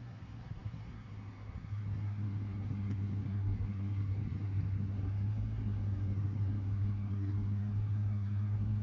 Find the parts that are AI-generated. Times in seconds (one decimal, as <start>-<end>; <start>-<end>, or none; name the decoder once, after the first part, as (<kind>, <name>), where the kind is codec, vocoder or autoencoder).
0.0-8.8 (codec, SNAC)

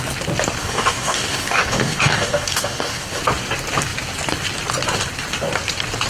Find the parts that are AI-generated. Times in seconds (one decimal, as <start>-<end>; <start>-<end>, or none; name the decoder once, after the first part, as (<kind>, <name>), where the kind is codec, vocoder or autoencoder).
0.6-3.2 (codec, DAC)

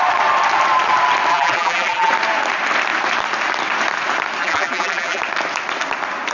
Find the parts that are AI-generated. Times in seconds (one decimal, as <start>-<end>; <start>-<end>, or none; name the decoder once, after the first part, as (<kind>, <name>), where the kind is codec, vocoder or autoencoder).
1.3-2.1 (vocoder, BigVGAN v2); 4.4-5.2